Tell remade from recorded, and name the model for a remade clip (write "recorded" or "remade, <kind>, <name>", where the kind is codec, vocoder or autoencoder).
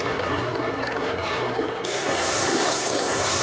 remade, codec, SNAC